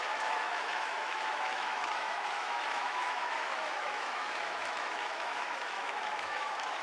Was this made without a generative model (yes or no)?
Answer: no